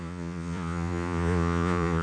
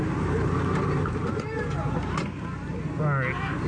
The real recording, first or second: second